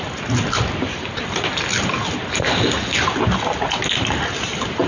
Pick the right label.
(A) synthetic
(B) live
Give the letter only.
B